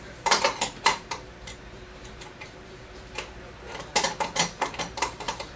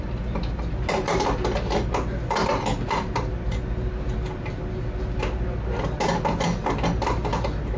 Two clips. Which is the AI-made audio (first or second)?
first